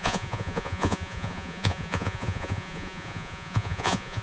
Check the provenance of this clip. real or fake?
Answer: fake